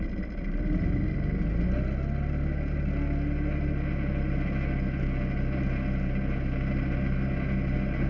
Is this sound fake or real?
real